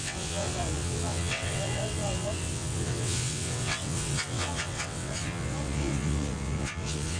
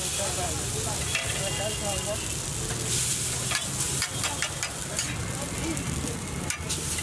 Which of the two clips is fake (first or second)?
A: first